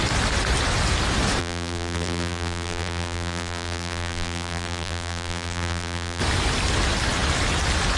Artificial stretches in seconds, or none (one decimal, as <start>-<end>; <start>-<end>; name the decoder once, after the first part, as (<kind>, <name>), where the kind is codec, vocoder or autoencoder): 1.4-6.2 (vocoder, BigVGAN v2)